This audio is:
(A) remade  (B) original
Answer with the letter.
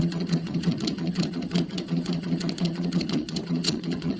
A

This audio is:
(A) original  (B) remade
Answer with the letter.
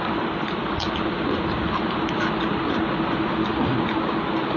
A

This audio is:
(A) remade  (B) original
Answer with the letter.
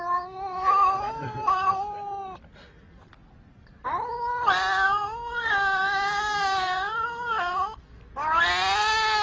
B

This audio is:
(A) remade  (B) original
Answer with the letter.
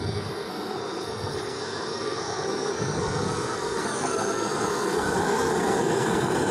A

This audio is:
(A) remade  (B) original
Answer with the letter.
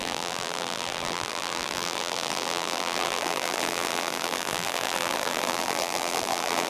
A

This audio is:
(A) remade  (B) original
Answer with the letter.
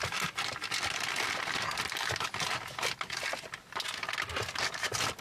B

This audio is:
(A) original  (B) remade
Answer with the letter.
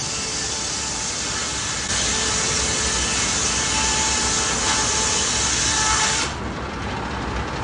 A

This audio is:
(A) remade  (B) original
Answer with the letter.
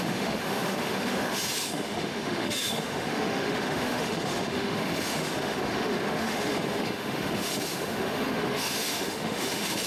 A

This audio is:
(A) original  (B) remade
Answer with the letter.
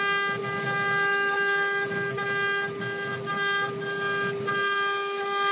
A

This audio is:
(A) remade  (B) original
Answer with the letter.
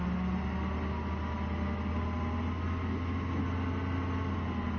B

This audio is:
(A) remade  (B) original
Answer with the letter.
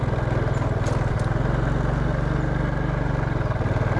B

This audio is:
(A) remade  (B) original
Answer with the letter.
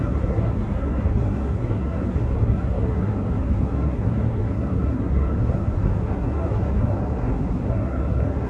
A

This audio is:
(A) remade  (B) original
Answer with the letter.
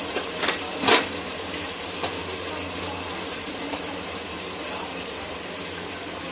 B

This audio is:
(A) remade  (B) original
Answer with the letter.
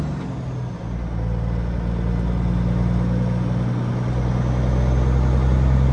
B